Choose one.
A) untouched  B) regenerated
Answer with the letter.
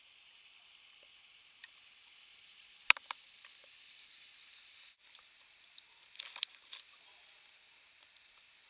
A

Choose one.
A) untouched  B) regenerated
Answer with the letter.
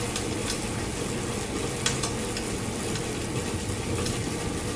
A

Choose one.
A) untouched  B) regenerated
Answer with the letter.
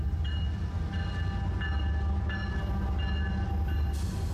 A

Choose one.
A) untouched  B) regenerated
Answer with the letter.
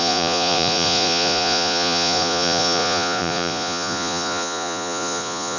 B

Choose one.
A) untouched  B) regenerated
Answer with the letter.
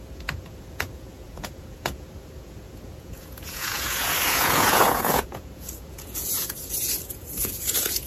B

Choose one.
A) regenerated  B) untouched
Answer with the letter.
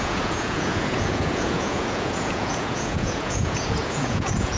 A